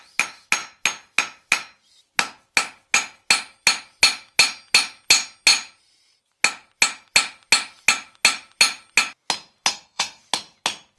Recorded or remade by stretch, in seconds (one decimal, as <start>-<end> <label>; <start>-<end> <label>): 0.0-9.7 recorded; 9.7-10.2 remade; 10.2-11.0 recorded